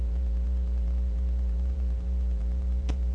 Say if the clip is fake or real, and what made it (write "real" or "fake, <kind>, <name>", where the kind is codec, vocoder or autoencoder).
fake, vocoder, BigVGAN v2